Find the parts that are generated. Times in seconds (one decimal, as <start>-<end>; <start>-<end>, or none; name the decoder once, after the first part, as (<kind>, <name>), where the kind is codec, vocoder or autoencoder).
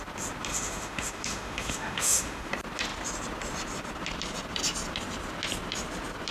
0.5-2.5 (autoencoder, DAC-VAE)